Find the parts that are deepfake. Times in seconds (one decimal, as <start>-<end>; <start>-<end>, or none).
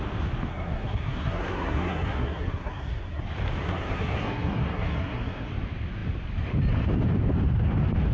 0.5-3.2; 3.6-5.5